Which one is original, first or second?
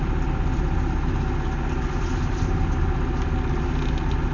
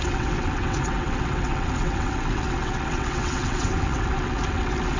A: first